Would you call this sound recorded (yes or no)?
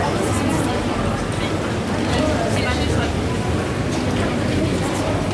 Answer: yes